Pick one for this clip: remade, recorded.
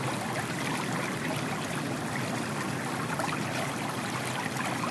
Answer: recorded